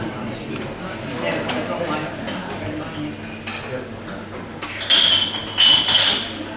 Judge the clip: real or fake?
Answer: real